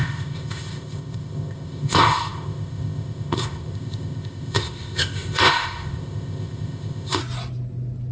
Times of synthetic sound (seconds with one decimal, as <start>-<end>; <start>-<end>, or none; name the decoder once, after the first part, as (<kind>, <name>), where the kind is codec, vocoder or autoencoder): 0.0-7.2 (codec, ZipCodec)